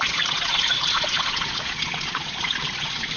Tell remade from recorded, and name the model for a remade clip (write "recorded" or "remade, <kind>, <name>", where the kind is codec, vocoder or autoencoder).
remade, vocoder, Vocos